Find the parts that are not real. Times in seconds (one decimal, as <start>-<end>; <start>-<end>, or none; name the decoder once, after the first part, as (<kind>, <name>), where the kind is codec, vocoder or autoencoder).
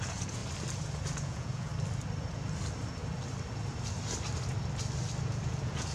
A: 0.0-0.4 (vocoder, Vocos); 1.1-1.7; 5.2-5.9